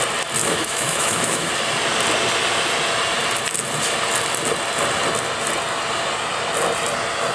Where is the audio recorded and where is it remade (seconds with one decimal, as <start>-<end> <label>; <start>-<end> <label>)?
0.0-0.4 recorded; 0.4-1.5 remade; 1.5-7.3 recorded